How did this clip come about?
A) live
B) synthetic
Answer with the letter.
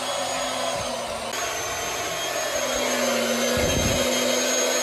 A